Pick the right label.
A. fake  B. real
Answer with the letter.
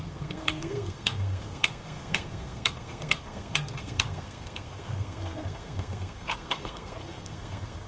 A